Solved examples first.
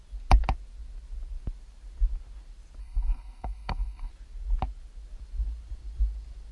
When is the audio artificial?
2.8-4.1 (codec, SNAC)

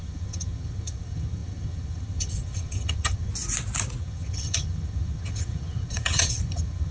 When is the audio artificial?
0.0-3.3 (vocoder, HiFi-GAN); 4.0-6.9

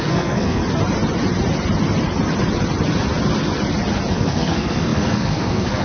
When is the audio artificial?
0.0-0.6 (codec, SNAC); 4.1-5.8

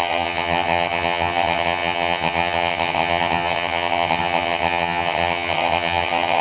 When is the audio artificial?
0.0-6.4 (vocoder, HiFi-GAN)

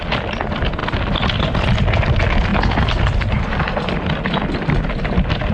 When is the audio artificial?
none

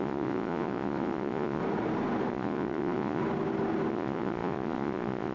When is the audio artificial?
0.0-1.6 (vocoder, Vocos); 2.3-3.2; 3.9-5.3

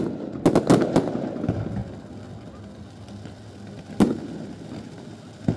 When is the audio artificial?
none